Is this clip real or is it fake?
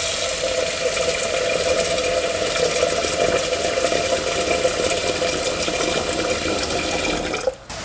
real